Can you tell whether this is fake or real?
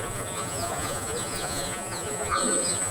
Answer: fake